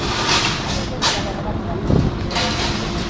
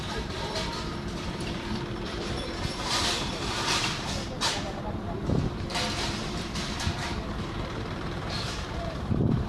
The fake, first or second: second